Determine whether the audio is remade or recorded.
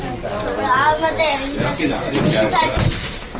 recorded